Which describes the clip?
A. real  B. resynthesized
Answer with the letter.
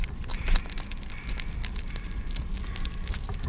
A